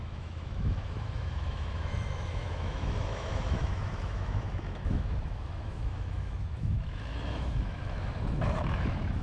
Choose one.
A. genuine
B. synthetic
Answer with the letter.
B